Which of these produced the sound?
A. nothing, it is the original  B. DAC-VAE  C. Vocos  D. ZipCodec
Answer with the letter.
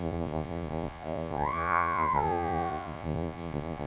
C